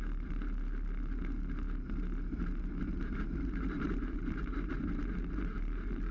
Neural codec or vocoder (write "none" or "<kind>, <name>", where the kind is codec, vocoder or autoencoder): none